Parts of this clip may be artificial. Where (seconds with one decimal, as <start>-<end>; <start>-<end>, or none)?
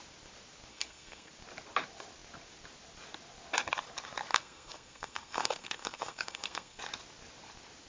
0.7-1.3; 4.3-6.8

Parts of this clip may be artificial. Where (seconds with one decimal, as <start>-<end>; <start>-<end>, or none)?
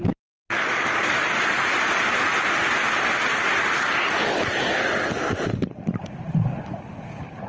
none